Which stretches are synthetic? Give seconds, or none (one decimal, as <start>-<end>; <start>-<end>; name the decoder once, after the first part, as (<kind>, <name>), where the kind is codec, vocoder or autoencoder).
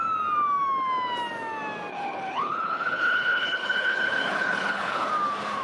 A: 1.9-5.1 (codec, HILCodec)